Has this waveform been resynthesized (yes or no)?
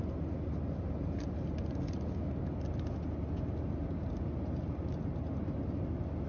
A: no